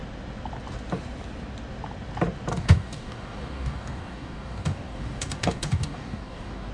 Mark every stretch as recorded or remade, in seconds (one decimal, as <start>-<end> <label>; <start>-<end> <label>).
0.0-2.5 recorded; 2.5-6.7 remade